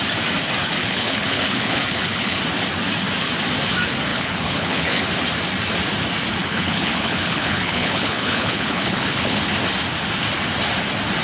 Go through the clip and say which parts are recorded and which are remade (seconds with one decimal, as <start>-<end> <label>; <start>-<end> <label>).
0.0-0.8 recorded; 0.8-2.4 remade; 2.4-4.1 recorded; 4.1-5.0 remade; 5.0-6.4 recorded; 6.4-9.4 remade; 9.4-11.2 recorded